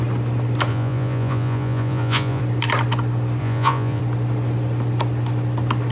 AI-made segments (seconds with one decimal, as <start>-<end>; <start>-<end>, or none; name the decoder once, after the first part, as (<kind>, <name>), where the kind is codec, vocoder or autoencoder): 0.7-2.4 (vocoder, Vocos); 3.4-4.0